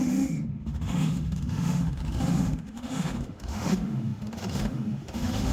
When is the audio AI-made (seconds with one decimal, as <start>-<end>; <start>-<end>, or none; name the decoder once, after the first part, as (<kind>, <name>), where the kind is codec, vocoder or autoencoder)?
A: 0.0-5.5 (autoencoder, DAC-VAE)